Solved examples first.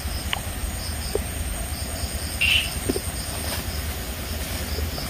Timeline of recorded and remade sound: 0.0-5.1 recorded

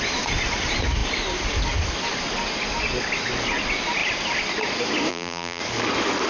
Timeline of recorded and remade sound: 0.0-5.1 recorded; 5.1-5.6 remade; 5.6-6.3 recorded

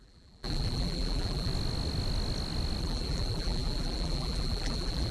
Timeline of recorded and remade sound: 0.0-1.5 remade; 1.5-2.8 recorded; 2.8-5.1 remade

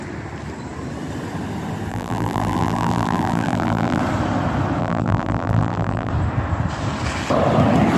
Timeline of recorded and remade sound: 0.0-1.9 recorded; 1.9-4.0 remade; 4.0-4.8 recorded; 4.8-6.1 remade; 6.1-8.0 recorded

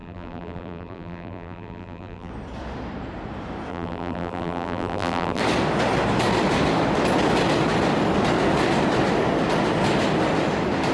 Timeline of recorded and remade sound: 0.0-2.3 remade; 2.3-3.7 recorded; 3.7-5.4 remade; 5.4-10.9 recorded